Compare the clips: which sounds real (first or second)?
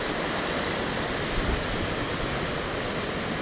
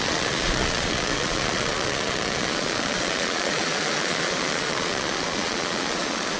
first